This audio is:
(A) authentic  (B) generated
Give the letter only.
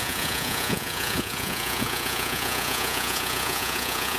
B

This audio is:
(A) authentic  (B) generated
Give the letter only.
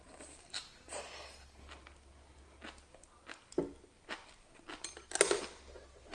A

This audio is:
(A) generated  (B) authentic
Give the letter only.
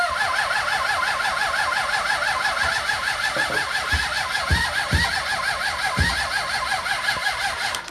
B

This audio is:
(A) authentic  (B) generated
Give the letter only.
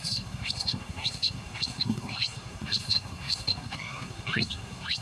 B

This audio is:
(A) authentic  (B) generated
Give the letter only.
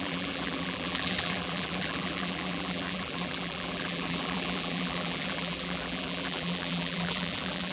B